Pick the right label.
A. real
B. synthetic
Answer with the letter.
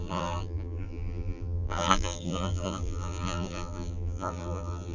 B